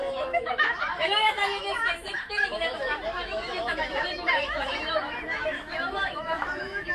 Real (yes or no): no